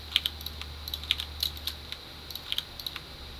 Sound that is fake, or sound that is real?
real